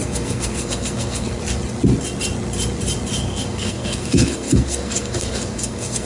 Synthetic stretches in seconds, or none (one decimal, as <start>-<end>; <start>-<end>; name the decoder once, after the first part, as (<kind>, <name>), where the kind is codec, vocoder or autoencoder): 0.0-1.4 (codec, SNAC); 3.2-6.1